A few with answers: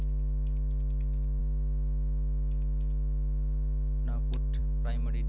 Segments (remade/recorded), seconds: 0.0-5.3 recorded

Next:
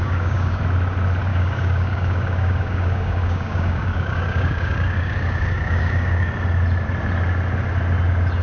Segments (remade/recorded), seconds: 0.0-0.6 remade; 0.6-1.3 recorded; 1.3-6.3 remade; 6.3-8.4 recorded

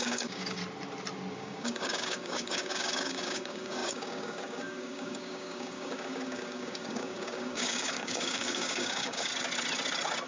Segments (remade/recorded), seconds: 0.0-0.6 remade; 0.6-1.3 recorded; 1.3-9.3 remade; 9.3-10.3 recorded

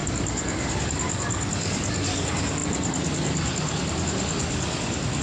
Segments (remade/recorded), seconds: 0.0-5.2 remade

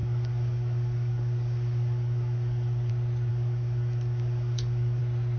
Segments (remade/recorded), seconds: 0.0-2.9 remade; 2.9-3.3 recorded; 3.3-5.0 remade; 5.0-5.4 recorded